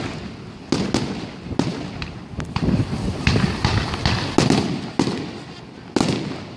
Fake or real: real